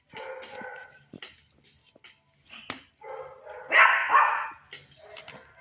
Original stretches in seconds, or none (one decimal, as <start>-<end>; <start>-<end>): 0.0-5.6